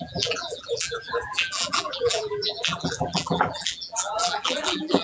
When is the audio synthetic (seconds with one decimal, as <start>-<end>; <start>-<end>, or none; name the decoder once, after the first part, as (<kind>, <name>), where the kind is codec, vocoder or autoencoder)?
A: 0.0-5.0 (vocoder, BigVGAN v2)